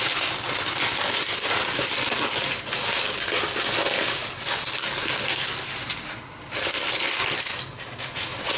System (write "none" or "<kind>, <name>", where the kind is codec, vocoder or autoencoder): none